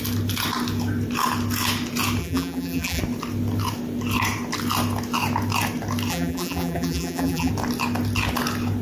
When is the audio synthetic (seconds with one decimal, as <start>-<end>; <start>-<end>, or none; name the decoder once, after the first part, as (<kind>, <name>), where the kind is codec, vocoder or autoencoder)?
2.2-3.0 (vocoder, BigVGAN v2); 6.1-7.5

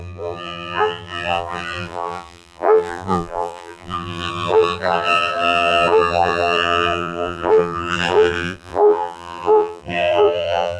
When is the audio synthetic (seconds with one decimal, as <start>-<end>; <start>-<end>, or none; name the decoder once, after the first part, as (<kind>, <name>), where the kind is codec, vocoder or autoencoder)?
0.0-10.8 (vocoder, BigVGAN v2)

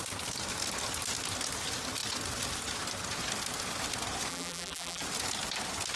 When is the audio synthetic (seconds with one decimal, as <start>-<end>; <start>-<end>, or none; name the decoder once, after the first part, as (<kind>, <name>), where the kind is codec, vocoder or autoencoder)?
4.3-5.0 (vocoder, BigVGAN v2)

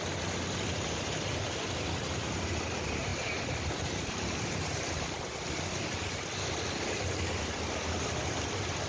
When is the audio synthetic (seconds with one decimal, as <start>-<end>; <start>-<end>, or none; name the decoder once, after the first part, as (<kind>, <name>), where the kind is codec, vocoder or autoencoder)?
0.0-3.1 (vocoder, BigVGAN v2); 6.8-8.9

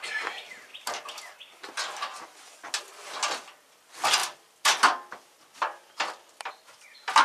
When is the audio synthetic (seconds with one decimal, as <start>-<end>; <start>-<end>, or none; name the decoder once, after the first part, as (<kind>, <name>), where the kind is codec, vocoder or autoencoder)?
4.2-5.1 (vocoder, BigVGAN v2); 5.5-6.5

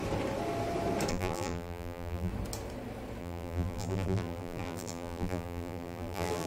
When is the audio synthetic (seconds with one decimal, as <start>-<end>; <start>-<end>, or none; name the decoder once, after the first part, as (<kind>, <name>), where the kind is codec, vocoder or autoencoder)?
1.1-2.3 (vocoder, BigVGAN v2); 3.2-6.5

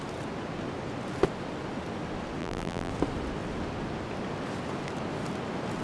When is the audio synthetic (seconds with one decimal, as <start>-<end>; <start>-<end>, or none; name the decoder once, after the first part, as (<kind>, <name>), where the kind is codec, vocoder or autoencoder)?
2.4-2.9 (vocoder, BigVGAN v2)

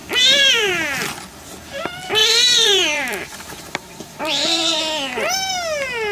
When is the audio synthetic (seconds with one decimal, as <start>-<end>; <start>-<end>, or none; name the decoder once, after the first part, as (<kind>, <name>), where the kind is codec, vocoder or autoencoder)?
0.0-0.7 (vocoder, BigVGAN v2); 2.2-4.8